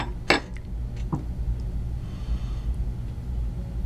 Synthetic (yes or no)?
no